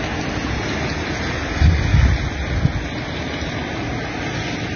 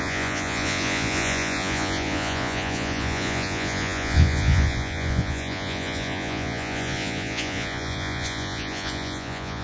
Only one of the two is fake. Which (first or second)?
second